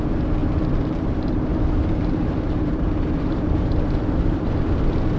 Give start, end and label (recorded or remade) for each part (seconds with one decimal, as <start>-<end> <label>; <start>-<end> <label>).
0.0-0.4 recorded; 0.4-1.1 remade; 1.1-1.5 recorded; 1.5-4.6 remade; 4.6-5.2 recorded